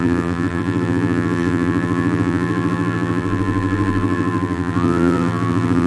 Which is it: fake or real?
fake